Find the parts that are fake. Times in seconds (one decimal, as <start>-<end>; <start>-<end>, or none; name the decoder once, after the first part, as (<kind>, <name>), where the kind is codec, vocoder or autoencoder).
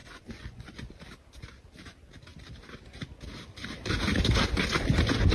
0.0-0.9 (vocoder, Vocos)